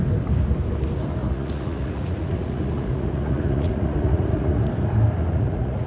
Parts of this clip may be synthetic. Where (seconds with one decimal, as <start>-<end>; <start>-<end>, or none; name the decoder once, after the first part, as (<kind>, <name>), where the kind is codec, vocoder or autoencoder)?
1.2-4.7 (vocoder, Vocos); 5.2-5.9